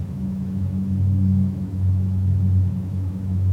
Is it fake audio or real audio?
fake